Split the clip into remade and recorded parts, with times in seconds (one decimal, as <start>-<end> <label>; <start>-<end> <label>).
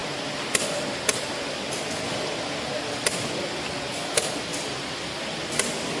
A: 0.0-6.0 recorded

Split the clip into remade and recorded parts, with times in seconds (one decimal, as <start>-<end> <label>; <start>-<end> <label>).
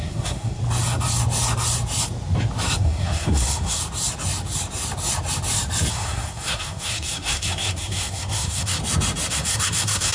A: 0.0-0.6 remade; 0.6-2.8 recorded; 2.8-3.8 remade; 3.8-5.9 recorded; 5.9-8.8 remade; 8.8-9.3 recorded; 9.3-10.1 remade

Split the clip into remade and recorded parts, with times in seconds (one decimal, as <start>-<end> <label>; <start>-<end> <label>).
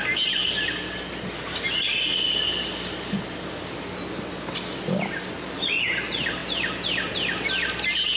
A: 0.0-8.2 recorded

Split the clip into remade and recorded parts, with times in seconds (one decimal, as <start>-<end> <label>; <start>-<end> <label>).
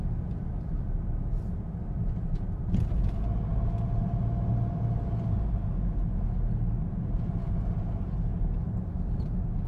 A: 0.0-9.7 recorded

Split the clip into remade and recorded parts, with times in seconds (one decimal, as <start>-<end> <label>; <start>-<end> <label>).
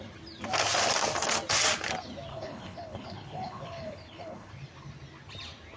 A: 0.0-2.3 recorded; 2.3-4.5 remade; 4.5-5.8 recorded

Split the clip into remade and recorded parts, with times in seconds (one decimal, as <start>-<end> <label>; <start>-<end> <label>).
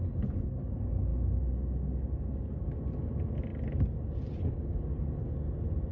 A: 0.0-5.9 recorded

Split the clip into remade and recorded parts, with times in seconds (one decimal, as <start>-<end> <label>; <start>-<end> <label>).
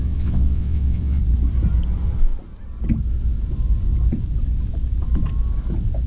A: 0.0-1.2 remade; 1.2-6.1 recorded